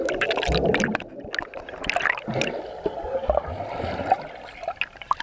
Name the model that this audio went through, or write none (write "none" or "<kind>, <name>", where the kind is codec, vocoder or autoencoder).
none